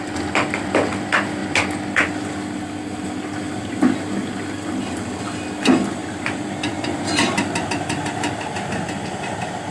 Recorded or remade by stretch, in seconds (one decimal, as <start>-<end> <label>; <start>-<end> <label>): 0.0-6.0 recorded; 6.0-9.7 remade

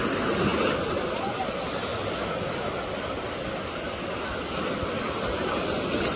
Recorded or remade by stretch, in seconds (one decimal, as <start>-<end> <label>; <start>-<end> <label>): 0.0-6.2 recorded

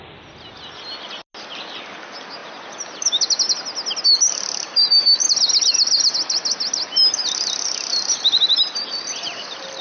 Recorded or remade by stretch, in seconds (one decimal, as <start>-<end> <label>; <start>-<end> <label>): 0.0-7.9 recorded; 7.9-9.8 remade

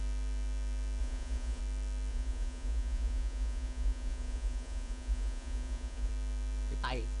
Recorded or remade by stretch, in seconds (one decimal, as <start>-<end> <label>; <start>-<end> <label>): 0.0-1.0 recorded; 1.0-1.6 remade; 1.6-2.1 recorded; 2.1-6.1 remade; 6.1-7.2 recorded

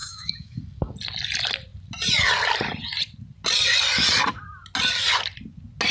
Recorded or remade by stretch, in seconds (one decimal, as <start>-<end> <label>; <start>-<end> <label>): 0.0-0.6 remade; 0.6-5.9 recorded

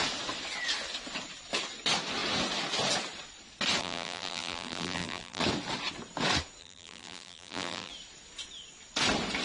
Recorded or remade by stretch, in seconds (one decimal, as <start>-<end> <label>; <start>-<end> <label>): 0.0-3.8 recorded; 3.8-5.4 remade; 5.4-6.6 recorded; 6.6-7.9 remade; 7.9-9.4 recorded

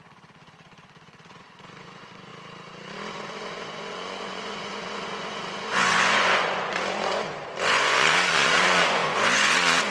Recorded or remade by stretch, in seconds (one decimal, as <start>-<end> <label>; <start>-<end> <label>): 0.0-2.3 remade; 2.3-3.1 recorded; 3.1-9.9 remade